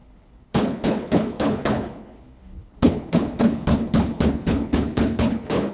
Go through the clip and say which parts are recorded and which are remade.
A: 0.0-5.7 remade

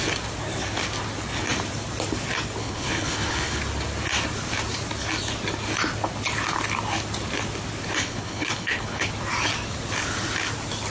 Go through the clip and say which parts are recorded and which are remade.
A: 0.0-2.6 recorded; 2.6-3.6 remade; 3.6-8.0 recorded; 8.0-9.1 remade; 9.1-10.9 recorded